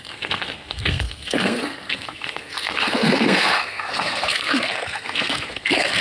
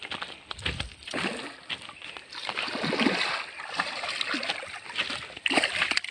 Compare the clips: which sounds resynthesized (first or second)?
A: first